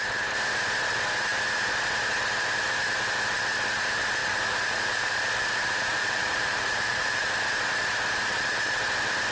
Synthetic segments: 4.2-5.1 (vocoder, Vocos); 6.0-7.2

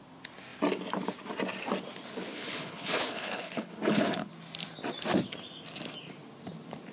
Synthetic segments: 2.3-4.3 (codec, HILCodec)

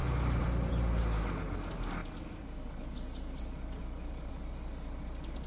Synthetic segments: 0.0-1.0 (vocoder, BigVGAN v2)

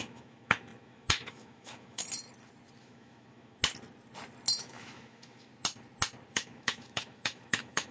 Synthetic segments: 0.0-2.0 (autoencoder, DAC-VAE); 2.8-3.6; 4.6-5.5; 6.3-7.9